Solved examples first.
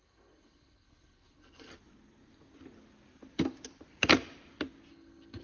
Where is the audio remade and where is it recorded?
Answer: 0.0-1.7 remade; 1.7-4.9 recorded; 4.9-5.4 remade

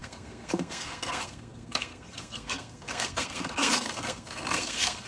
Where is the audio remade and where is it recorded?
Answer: 0.0-5.1 remade

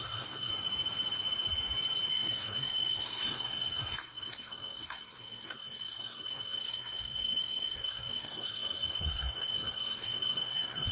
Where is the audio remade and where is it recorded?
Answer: 0.0-0.5 remade; 0.5-2.1 recorded; 2.1-10.9 remade

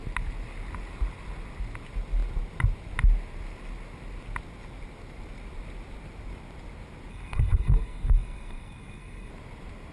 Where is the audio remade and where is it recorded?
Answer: 0.0-7.1 recorded; 7.1-9.3 remade; 9.3-9.9 recorded

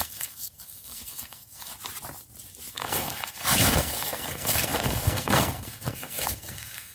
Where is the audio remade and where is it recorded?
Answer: 0.0-1.7 remade; 1.7-2.7 recorded; 2.7-6.9 remade

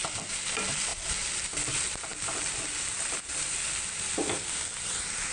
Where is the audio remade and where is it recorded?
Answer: 0.0-5.3 recorded

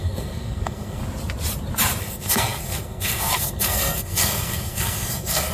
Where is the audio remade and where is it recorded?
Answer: 0.0-1.0 remade; 1.0-2.0 recorded; 2.0-5.5 remade